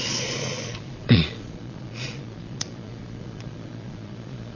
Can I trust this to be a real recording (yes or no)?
no